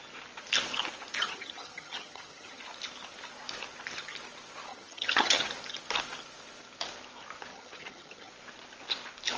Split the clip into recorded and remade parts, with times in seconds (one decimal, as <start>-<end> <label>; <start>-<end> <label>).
0.0-1.2 recorded; 1.2-2.6 remade; 2.6-4.7 recorded; 4.7-5.5 remade; 5.5-7.5 recorded; 7.5-8.3 remade; 8.3-9.4 recorded